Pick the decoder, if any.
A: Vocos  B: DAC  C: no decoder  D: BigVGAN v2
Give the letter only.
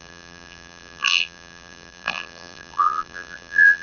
D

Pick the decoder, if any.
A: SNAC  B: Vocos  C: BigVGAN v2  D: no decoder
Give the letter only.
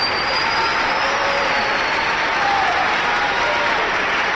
C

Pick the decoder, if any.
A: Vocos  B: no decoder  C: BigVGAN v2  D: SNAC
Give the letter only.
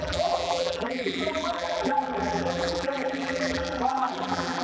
C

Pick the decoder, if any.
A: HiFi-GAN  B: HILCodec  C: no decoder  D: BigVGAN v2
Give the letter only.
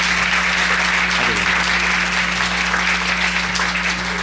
C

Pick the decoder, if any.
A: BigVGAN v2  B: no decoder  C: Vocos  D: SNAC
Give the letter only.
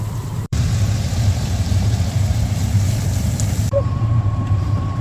A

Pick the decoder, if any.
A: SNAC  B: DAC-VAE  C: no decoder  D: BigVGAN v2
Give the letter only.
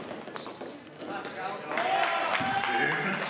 C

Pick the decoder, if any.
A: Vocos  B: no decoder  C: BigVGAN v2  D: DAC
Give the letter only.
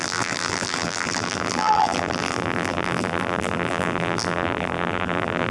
C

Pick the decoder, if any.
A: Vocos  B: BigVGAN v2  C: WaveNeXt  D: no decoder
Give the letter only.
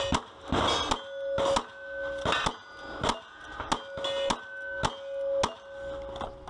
D